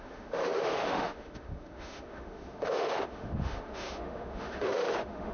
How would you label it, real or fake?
fake